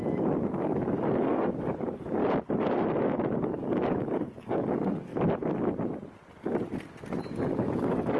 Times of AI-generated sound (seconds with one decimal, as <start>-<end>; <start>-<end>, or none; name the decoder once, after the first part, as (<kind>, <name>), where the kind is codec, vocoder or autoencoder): 0.6-2.2 (codec, DAC); 3.4-5.1; 7.2-8.2